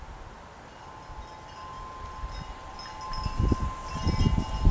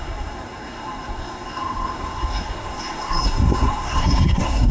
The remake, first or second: second